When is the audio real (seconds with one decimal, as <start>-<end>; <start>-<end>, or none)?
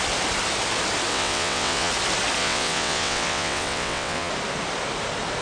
0.0-1.1; 1.9-2.4; 4.3-5.4